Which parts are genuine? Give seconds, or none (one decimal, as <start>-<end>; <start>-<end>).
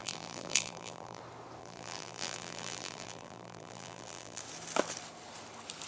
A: 1.2-1.6; 4.4-5.9